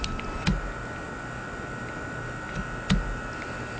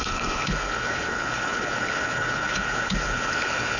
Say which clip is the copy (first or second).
second